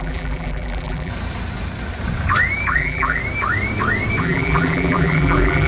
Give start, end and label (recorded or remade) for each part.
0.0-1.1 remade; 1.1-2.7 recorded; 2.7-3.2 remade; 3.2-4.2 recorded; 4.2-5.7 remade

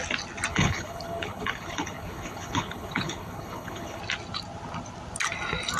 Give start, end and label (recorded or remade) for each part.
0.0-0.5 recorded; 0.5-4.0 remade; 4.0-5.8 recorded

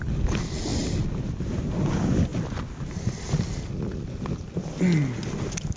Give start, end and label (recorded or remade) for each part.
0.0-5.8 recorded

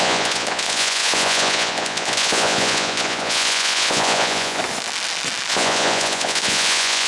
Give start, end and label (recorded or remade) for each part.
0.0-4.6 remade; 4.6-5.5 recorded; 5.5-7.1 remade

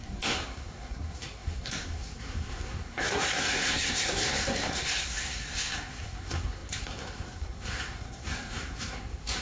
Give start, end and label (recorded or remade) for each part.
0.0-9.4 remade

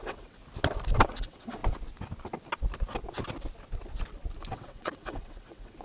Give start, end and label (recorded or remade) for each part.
0.0-0.4 remade; 0.4-1.0 recorded; 1.0-1.6 remade; 1.6-4.5 recorded; 4.5-5.8 remade

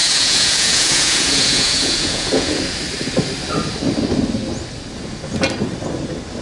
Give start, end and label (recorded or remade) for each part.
0.0-2.6 remade; 2.6-6.4 recorded